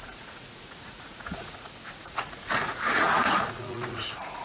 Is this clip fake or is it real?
fake